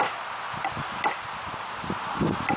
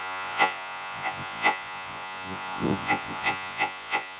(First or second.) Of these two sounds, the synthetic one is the second